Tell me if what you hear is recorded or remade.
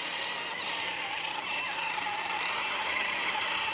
recorded